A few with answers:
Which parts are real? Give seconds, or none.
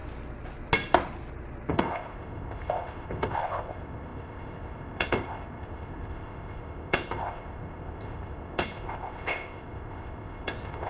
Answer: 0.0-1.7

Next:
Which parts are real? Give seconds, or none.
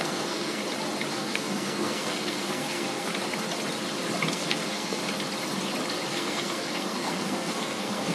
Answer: 0.6-1.1; 3.1-4.3; 5.0-6.1